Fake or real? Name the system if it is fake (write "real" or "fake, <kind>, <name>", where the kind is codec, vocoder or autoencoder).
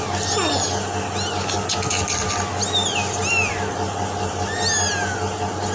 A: real